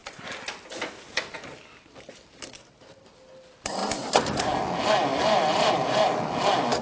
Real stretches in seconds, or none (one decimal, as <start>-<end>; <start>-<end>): 0.0-6.8

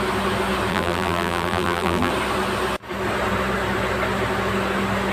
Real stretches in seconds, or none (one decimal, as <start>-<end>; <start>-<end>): 0.0-0.7; 2.1-5.1

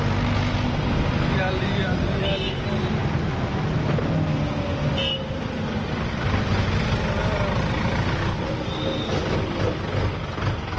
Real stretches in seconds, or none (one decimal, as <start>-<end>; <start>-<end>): 0.0-10.8

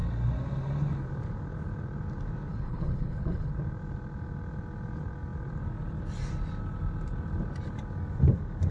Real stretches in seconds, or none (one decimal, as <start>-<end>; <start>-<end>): 0.0-2.5; 3.5-8.7

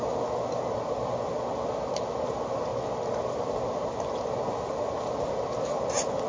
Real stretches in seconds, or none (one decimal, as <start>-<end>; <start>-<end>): 0.0-6.3

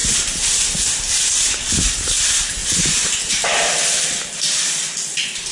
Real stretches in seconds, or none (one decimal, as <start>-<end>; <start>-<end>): 0.0-5.5

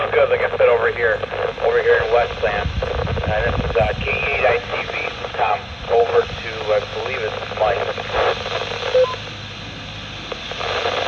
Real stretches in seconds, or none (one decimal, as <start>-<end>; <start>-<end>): 0.0-4.7; 6.2-11.1